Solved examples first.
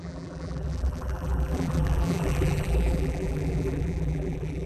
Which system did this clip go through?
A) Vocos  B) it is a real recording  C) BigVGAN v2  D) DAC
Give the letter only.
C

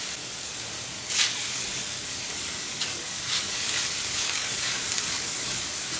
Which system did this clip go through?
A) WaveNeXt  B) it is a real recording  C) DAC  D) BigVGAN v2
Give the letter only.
C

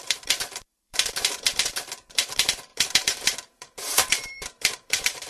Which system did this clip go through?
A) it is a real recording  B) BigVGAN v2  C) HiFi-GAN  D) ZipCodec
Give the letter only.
B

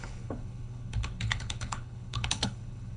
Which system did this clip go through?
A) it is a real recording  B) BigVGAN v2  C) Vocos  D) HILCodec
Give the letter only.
D